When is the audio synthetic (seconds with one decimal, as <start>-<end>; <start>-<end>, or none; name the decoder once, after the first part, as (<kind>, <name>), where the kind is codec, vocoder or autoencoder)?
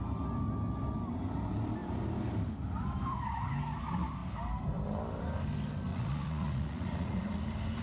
5.9-7.3 (vocoder, Vocos)